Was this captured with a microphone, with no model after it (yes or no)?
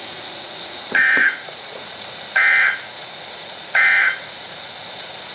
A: no